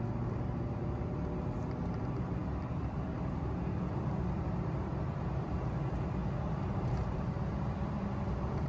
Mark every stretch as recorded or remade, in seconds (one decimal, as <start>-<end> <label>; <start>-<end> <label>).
0.0-8.7 remade